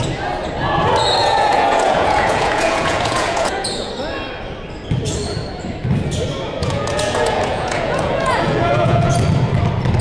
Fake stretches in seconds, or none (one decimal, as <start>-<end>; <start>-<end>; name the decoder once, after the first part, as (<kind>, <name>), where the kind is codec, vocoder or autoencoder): 1.2-3.9 (vocoder, Vocos); 6.6-9.1